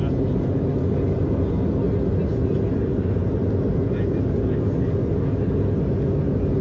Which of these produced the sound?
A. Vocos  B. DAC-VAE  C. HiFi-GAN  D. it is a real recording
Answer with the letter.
D